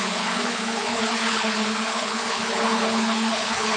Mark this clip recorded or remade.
remade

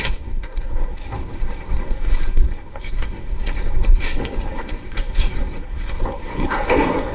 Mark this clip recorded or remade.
remade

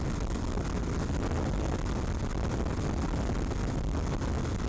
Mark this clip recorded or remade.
recorded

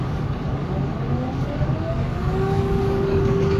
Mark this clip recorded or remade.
remade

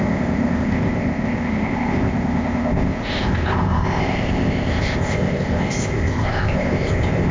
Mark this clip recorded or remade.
remade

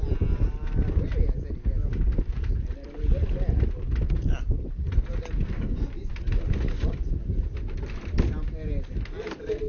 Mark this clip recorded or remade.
recorded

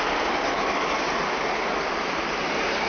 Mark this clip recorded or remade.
recorded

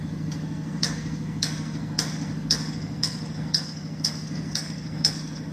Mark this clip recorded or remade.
remade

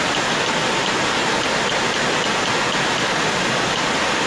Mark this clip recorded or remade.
recorded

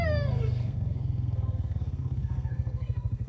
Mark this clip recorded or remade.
remade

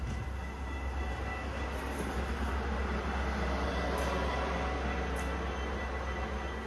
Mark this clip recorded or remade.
recorded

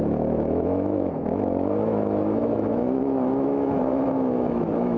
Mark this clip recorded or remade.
remade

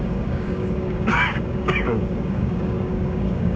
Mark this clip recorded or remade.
remade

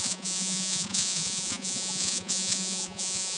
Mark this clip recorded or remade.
remade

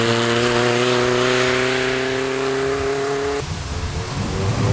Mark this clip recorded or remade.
recorded